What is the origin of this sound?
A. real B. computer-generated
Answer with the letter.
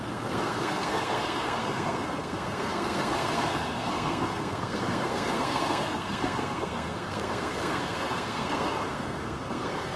B